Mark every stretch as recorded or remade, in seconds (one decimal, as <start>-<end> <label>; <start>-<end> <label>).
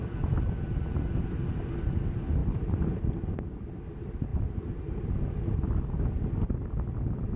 0.0-4.3 recorded; 4.3-5.3 remade; 5.3-7.4 recorded